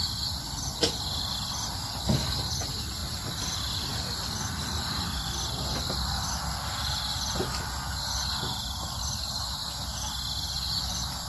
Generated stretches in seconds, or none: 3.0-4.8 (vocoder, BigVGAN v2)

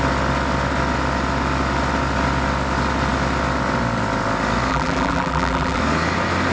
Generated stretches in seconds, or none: 4.7-5.8 (vocoder, BigVGAN v2)

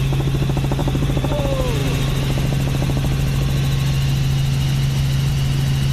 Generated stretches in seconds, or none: 0.8-1.4 (vocoder, BigVGAN v2)

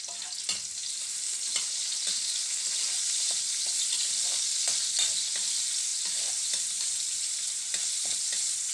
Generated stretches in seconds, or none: 0.8-3.6 (vocoder, BigVGAN v2); 5.9-7.0